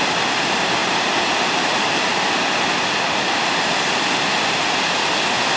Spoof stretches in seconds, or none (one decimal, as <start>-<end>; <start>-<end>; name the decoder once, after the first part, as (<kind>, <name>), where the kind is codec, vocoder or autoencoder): 0.0-2.1 (vocoder, BigVGAN v2)